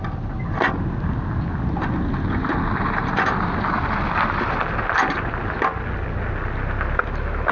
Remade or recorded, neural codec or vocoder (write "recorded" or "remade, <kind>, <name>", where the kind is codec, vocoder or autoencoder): recorded